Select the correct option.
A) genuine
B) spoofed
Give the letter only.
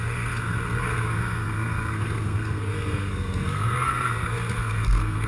B